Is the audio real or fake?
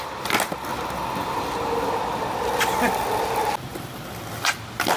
real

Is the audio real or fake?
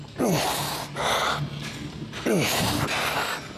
real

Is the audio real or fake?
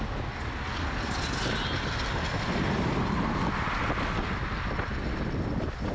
real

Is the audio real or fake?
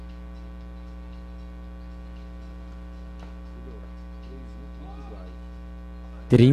real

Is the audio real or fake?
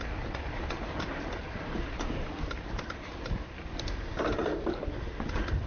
real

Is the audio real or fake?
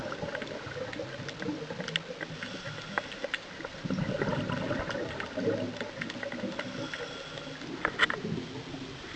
real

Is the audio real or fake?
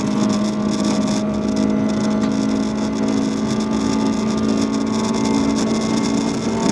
real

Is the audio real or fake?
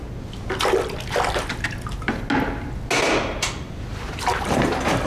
real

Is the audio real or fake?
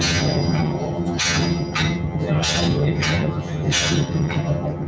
fake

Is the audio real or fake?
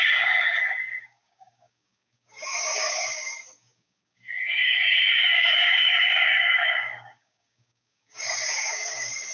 fake